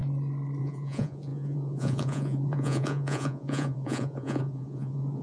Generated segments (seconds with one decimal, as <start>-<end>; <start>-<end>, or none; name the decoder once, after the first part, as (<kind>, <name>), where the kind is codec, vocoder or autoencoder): 0.6-5.2 (vocoder, Vocos)